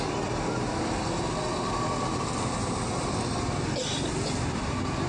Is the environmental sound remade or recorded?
recorded